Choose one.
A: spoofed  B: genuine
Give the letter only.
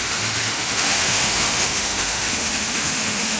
A